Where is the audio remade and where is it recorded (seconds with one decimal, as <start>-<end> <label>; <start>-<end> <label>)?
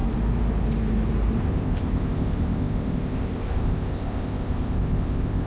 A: 0.0-1.4 recorded; 1.4-5.5 remade